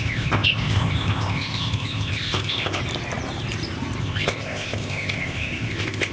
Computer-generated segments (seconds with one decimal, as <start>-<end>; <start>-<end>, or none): 0.0-2.8; 4.0-6.1